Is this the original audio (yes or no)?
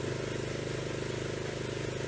yes